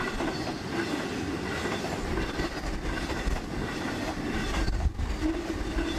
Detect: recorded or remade recorded